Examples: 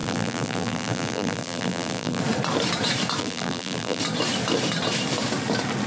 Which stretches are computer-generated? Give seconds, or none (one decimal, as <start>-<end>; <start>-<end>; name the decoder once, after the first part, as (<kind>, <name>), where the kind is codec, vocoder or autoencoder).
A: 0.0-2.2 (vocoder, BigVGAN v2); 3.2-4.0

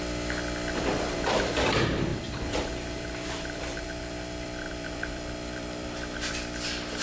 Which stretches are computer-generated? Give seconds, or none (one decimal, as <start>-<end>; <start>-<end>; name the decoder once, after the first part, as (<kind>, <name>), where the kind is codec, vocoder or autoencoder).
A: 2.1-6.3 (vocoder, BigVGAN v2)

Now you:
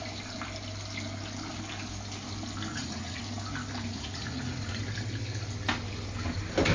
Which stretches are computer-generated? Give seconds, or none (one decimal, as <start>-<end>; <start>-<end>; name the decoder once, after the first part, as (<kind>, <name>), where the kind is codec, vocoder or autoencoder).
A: 2.7-3.2 (vocoder, Vocos); 3.9-4.8